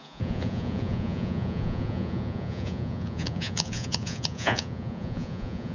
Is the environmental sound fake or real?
fake